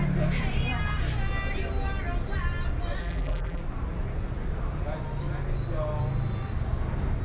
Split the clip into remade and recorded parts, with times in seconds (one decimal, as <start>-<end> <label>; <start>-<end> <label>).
0.0-3.0 recorded; 3.0-3.6 remade; 3.6-7.2 recorded